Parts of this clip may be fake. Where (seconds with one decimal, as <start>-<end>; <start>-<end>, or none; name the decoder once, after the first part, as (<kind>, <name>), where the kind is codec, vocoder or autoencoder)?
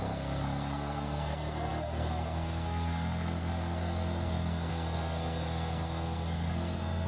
0.0-7.1 (codec, SNAC)